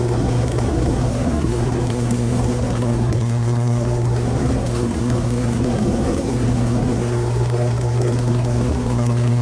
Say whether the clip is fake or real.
fake